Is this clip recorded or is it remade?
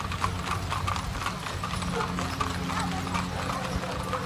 recorded